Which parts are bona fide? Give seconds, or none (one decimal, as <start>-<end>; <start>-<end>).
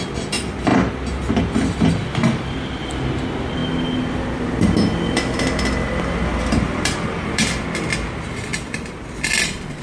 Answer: 0.0-0.7; 2.9-3.6; 7.3-9.8